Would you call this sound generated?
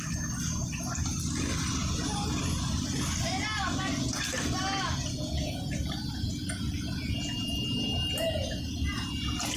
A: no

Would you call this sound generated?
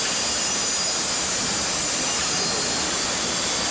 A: no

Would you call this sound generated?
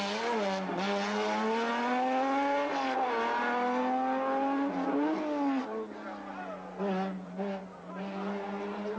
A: no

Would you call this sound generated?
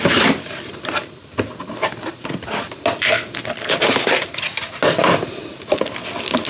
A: no